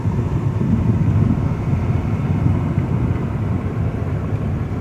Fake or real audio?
real